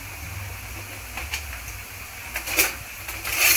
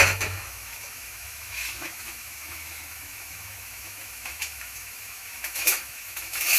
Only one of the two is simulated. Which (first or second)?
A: second